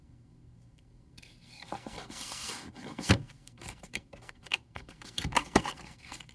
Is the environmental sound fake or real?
fake